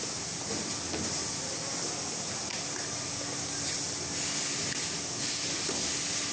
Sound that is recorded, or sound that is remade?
recorded